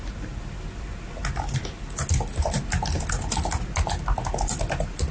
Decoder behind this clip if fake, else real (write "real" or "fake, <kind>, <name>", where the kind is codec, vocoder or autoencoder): real